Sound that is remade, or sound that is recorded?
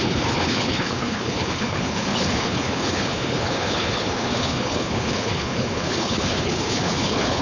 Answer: remade